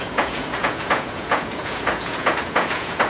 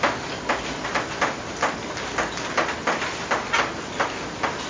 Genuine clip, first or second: second